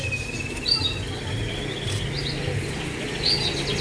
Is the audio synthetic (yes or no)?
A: no